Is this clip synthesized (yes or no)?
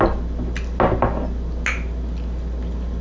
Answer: no